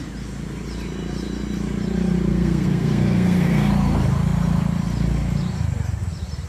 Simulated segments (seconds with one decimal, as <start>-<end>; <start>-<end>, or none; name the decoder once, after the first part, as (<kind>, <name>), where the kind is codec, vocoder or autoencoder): 2.3-3.7 (codec, SNAC)